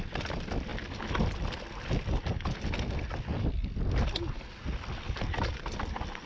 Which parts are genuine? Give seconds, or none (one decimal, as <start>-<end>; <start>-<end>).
0.0-6.3